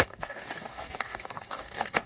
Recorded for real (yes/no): no